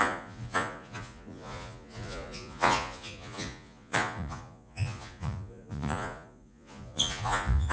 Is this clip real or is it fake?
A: fake